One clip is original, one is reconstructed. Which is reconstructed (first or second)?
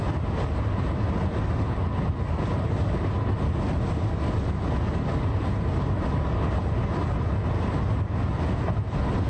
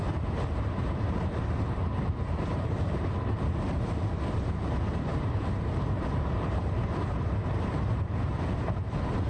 second